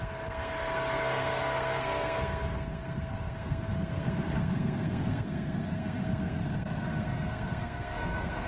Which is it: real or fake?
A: fake